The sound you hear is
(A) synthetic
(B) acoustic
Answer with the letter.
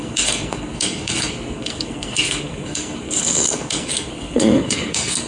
A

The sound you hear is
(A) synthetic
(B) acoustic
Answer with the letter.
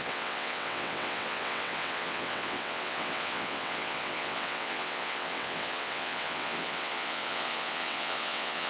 A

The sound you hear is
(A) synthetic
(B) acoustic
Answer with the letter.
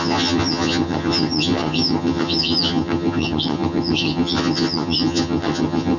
A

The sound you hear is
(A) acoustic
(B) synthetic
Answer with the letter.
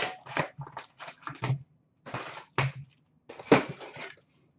A